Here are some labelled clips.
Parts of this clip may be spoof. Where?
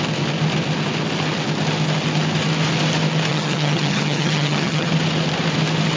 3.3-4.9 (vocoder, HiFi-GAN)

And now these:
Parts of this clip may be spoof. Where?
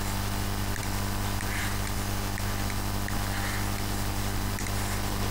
none